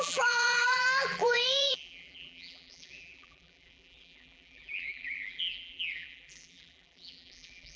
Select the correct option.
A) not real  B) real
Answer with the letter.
A